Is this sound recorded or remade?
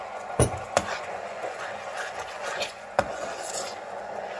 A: remade